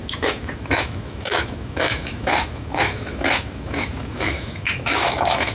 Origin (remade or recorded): remade